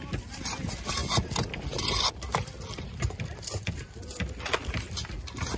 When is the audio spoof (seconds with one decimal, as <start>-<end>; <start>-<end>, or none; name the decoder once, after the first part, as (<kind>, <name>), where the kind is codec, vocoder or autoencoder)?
none